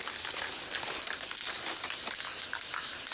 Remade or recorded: recorded